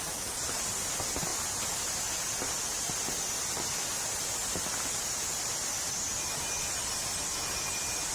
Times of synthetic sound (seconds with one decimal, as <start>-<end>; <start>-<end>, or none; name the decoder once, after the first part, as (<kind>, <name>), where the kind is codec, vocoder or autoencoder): none